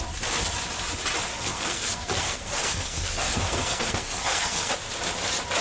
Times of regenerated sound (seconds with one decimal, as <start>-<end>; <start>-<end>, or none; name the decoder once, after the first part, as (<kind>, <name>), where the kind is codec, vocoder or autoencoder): 1.3-4.7 (codec, SNAC)